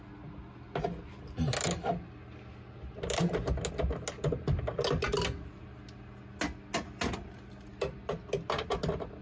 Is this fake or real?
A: real